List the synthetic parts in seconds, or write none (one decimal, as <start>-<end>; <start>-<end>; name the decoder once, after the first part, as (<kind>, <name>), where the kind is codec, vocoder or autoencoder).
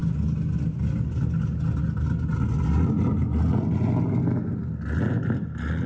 none